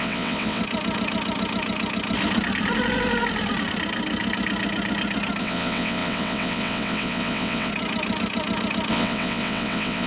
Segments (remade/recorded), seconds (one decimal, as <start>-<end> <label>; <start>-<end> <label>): 0.0-0.6 remade; 0.6-5.4 recorded; 5.4-7.7 remade; 7.7-8.9 recorded; 8.9-10.1 remade